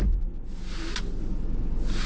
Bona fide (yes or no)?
yes